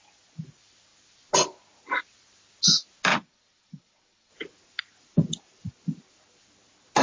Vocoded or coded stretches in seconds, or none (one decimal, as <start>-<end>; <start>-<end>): 3.1-4.3